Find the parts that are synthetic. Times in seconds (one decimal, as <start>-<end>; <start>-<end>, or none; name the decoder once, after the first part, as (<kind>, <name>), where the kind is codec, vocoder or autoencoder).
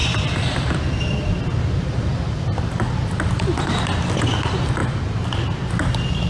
none